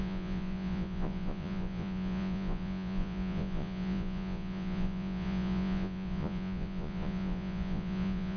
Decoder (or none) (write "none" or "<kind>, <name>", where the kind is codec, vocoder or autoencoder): vocoder, Vocos